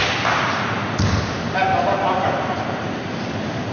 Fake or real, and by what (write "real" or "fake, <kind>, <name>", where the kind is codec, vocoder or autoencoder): real